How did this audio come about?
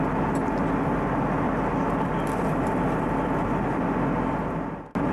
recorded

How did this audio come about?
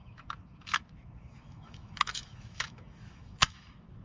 remade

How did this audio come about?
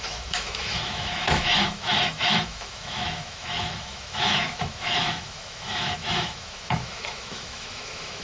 remade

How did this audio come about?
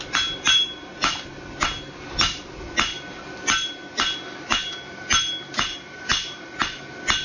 recorded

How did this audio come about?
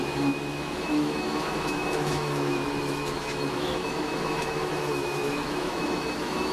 remade